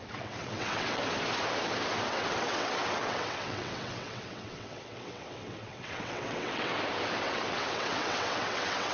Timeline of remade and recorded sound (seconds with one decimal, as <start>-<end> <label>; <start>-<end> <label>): 0.0-1.0 remade; 1.0-2.1 recorded; 2.1-6.7 remade; 6.7-7.2 recorded; 7.2-8.9 remade